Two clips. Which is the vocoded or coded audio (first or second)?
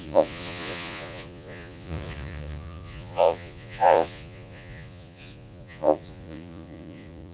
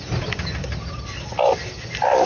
first